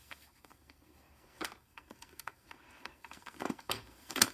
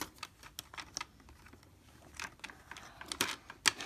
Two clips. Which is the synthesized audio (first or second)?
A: first